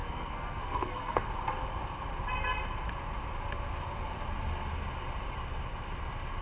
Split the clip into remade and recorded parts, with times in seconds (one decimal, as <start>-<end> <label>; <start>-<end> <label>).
0.0-1.3 remade; 1.3-6.4 recorded